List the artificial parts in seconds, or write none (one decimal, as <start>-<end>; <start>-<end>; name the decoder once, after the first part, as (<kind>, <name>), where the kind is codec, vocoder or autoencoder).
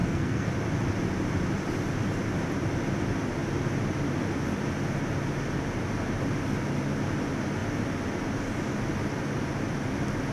0.0-0.5 (codec, SNAC)